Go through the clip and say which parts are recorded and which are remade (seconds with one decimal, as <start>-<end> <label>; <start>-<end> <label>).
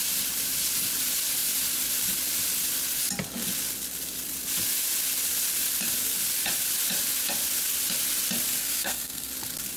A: 0.0-8.6 recorded; 8.6-9.3 remade; 9.3-9.8 recorded